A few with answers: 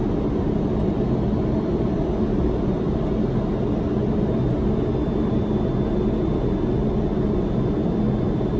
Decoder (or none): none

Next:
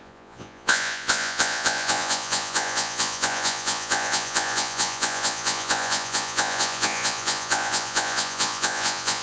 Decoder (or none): vocoder, Vocos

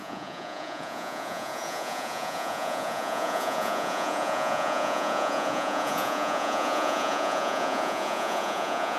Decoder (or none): vocoder, Vocos